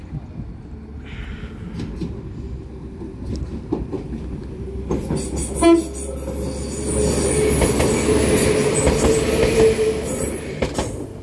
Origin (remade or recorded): recorded